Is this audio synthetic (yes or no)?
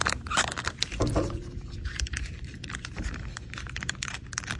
yes